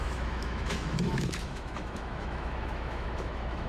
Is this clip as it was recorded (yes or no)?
no